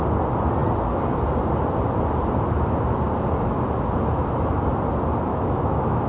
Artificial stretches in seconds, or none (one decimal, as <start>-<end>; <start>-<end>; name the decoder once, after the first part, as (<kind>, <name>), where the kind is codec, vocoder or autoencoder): 5.3-6.1 (autoencoder, DAC-VAE)